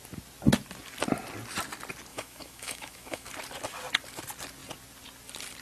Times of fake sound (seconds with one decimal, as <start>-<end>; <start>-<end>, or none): 2.1-3.3